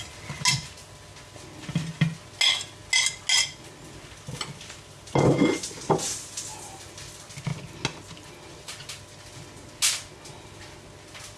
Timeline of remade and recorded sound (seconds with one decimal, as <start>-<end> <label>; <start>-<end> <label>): 0.0-11.4 recorded